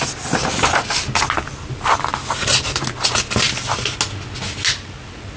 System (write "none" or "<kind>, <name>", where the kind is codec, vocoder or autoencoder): none